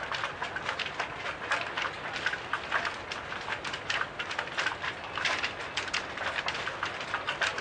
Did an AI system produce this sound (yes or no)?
no